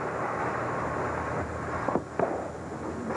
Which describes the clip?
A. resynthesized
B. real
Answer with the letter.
B